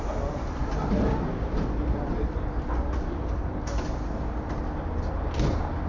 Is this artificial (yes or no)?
no